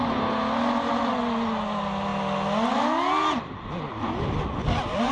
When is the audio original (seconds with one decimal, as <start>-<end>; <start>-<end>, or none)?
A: 0.0-5.1